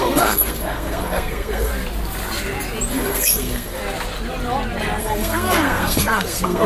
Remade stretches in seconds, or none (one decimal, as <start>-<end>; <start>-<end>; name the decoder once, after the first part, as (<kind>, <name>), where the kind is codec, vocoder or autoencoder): 0.0-1.7 (codec, SNAC); 2.9-3.8; 5.0-6.7